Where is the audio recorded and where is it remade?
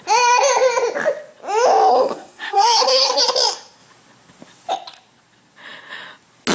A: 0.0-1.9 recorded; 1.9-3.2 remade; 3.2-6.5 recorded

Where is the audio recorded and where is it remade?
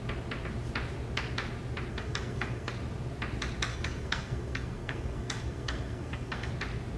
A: 0.0-1.9 recorded; 1.9-2.7 remade; 2.7-3.7 recorded; 3.7-6.5 remade; 6.5-7.0 recorded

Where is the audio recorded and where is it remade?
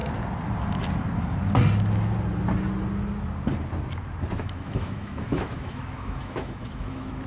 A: 0.0-4.4 recorded; 4.4-7.3 remade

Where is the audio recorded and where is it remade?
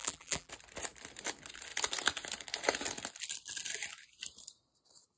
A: 0.0-0.5 remade; 0.5-5.2 recorded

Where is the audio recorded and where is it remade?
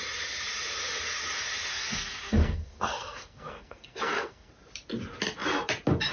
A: 0.0-1.7 recorded; 1.7-4.5 remade; 4.5-6.1 recorded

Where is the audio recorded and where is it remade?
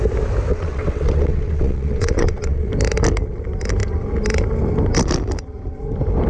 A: 0.0-0.5 recorded; 0.5-2.7 remade; 2.7-6.3 recorded